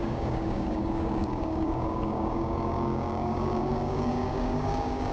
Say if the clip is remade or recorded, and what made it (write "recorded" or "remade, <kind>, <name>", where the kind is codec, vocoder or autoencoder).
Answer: remade, codec, DAC